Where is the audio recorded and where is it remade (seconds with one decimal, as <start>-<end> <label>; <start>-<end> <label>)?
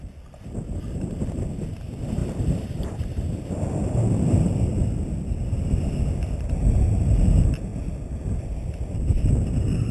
0.0-2.2 recorded; 2.2-3.5 remade; 3.5-9.9 recorded